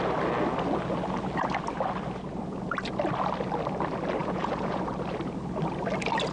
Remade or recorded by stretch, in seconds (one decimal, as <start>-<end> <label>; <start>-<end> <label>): 0.0-4.2 recorded; 4.2-4.8 remade; 4.8-6.3 recorded